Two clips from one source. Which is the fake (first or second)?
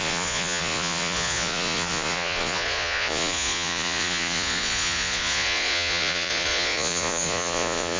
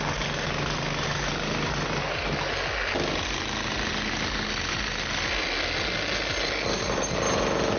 first